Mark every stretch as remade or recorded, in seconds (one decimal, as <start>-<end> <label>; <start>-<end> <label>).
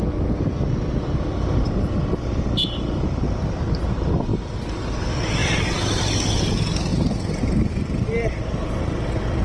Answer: 0.0-9.4 recorded